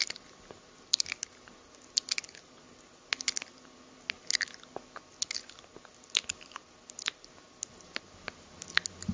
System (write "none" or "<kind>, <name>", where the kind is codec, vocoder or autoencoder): none